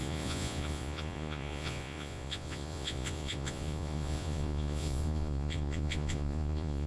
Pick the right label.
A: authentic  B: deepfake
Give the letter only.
B